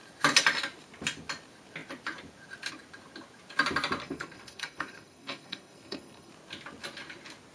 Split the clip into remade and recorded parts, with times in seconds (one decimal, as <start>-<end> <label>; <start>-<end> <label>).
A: 0.0-4.0 recorded; 4.0-6.3 remade; 6.3-7.5 recorded

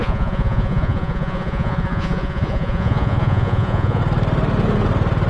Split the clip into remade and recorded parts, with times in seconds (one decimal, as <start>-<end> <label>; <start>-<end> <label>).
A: 0.0-4.0 remade; 4.0-5.3 recorded

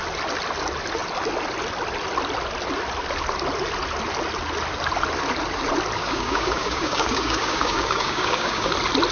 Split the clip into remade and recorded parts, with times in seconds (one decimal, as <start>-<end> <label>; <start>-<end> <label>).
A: 0.0-6.0 recorded; 6.0-8.7 remade; 8.7-9.1 recorded

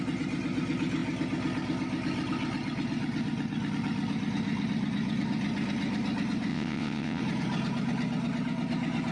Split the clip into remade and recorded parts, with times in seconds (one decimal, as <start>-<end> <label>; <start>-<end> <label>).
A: 0.0-6.5 recorded; 6.5-7.2 remade; 7.2-9.1 recorded

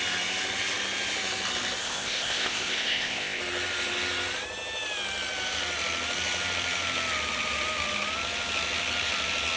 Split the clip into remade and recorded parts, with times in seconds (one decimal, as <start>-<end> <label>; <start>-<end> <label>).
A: 0.0-1.8 recorded; 1.8-3.4 remade; 3.4-9.6 recorded